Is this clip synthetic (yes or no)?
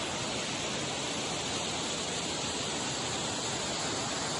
no